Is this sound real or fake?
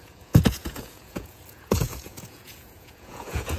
fake